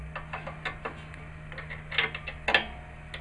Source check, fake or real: real